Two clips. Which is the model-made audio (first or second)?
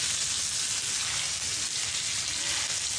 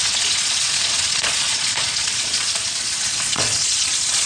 second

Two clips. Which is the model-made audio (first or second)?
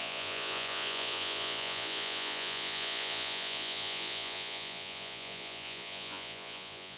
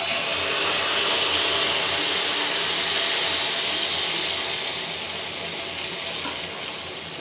first